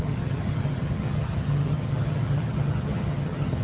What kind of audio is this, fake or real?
fake